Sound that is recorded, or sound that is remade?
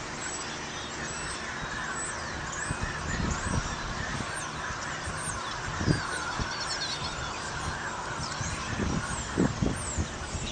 recorded